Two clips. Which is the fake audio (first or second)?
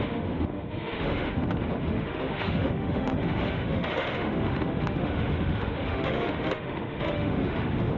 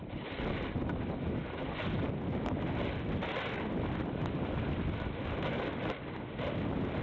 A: first